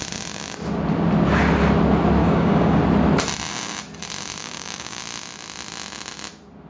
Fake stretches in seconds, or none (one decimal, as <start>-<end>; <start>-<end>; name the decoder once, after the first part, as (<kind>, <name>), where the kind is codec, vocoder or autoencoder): 2.2-2.8 (codec, DAC); 4.4-5.0